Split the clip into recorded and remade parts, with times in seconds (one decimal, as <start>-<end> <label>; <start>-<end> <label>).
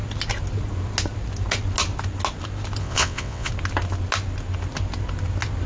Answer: 0.0-2.8 recorded; 2.8-3.5 remade; 3.5-5.7 recorded